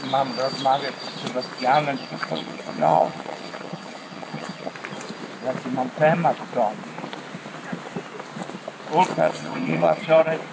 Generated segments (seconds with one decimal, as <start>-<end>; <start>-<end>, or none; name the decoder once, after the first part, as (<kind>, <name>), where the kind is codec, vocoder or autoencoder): 2.0-4.7 (vocoder, HiFi-GAN); 9.1-10.0